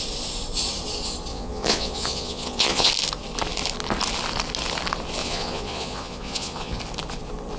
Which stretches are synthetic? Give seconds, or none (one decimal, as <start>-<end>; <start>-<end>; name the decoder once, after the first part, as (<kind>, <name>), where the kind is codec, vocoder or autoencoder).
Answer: 1.3-2.9 (vocoder, Vocos); 5.2-6.8